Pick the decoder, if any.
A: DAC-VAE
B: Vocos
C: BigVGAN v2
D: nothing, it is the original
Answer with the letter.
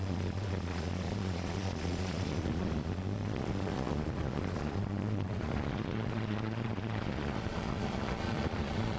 B